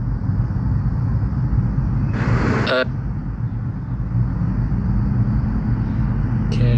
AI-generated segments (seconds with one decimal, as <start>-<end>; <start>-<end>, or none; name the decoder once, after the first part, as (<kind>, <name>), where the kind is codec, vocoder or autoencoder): none